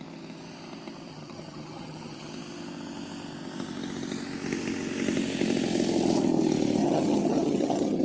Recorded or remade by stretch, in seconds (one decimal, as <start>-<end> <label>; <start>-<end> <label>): 0.0-1.1 recorded; 1.1-2.3 remade; 2.3-6.8 recorded; 6.8-8.0 remade